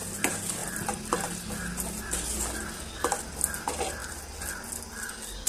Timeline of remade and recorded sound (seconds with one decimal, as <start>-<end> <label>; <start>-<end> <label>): 0.0-5.5 recorded